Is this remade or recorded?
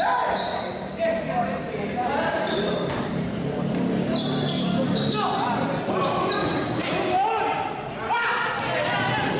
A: recorded